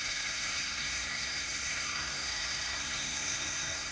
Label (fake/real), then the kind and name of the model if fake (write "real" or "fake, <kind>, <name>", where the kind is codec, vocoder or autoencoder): fake, codec, SNAC